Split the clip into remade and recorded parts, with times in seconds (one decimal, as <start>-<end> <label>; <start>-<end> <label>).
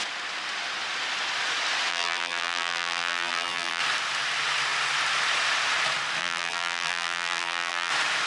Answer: 0.0-1.9 recorded; 1.9-3.8 remade; 3.8-6.2 recorded; 6.2-7.9 remade; 7.9-8.3 recorded